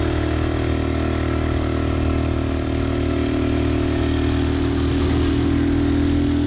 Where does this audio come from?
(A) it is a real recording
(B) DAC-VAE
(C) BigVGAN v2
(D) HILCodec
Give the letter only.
A